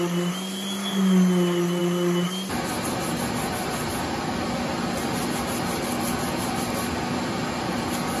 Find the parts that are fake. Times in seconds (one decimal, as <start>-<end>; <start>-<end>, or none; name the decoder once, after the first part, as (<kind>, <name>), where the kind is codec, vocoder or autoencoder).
none